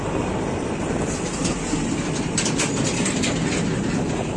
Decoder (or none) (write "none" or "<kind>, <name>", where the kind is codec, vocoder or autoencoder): none